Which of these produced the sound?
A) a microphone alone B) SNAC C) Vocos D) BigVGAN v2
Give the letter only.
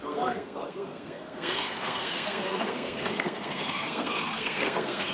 B